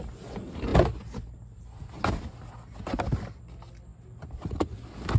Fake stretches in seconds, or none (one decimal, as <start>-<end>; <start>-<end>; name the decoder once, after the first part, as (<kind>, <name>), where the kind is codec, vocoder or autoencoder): none